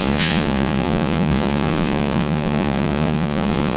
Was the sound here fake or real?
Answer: fake